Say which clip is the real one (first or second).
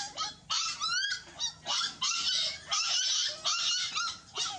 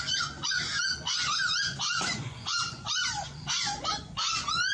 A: first